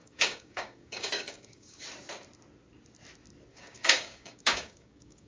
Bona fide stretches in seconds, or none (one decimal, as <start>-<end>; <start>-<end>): 1.8-3.5